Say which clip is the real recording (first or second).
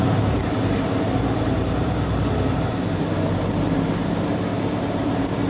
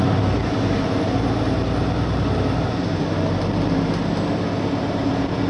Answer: second